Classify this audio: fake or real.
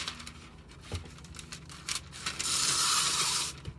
fake